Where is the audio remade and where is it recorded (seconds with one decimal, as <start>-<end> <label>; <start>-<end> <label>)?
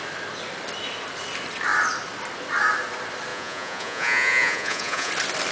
0.0-3.3 recorded; 3.3-5.1 remade; 5.1-5.5 recorded